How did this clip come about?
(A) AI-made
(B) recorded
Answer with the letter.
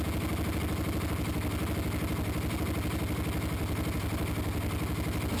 B